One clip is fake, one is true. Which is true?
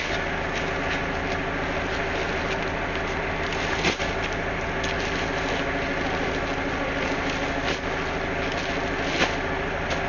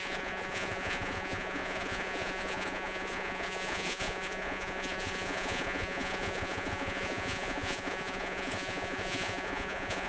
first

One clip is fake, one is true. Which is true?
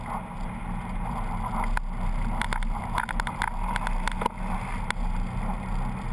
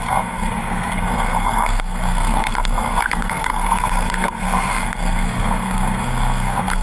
first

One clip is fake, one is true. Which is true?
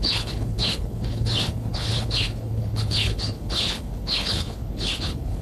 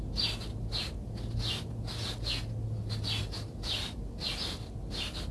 second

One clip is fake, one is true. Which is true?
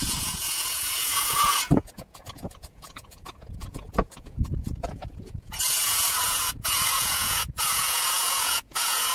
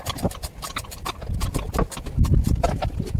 second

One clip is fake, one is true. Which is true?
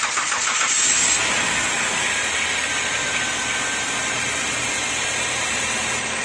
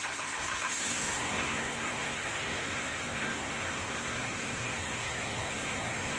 first